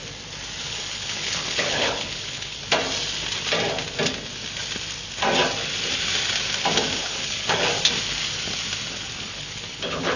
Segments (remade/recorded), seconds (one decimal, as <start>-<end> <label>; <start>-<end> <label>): 0.0-0.6 recorded; 0.6-2.6 remade; 2.6-7.0 recorded; 7.0-7.7 remade; 7.7-9.2 recorded; 9.2-10.2 remade